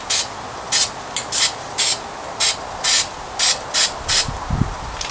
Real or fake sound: real